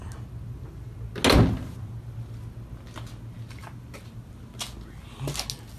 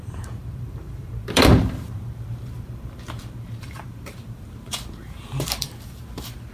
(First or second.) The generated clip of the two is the second